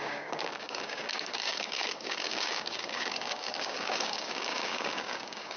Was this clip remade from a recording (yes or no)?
yes